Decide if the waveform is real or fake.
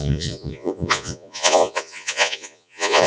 fake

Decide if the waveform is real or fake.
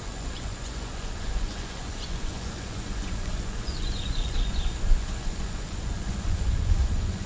fake